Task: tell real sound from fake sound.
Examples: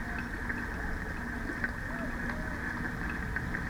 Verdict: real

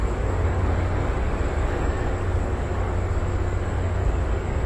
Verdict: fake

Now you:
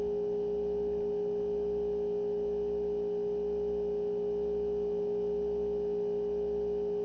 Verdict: real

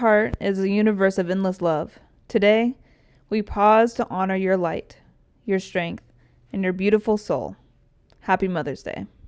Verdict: real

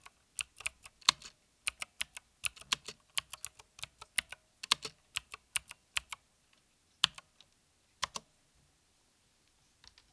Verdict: real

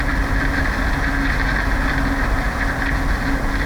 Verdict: real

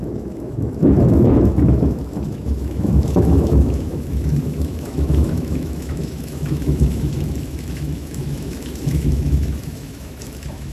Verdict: fake